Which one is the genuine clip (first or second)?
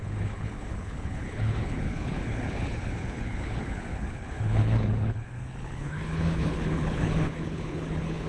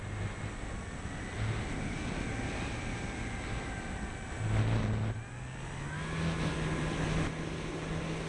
second